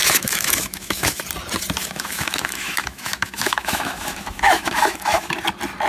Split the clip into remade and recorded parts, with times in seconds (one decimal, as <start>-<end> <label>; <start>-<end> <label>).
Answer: 0.0-1.2 remade; 1.2-1.8 recorded; 1.8-5.3 remade; 5.3-5.9 recorded

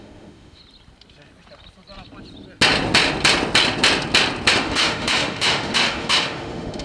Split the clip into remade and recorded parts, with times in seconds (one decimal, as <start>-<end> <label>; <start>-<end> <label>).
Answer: 0.0-0.6 remade; 0.6-4.5 recorded; 4.5-6.8 remade

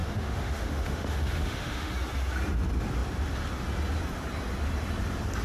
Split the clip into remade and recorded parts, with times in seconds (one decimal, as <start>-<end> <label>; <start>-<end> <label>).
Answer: 0.0-1.9 remade; 1.9-5.4 recorded